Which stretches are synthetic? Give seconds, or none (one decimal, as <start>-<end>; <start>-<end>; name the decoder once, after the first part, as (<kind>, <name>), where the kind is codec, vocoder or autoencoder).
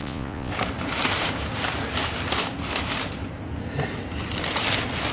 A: 0.0-0.5 (vocoder, Vocos)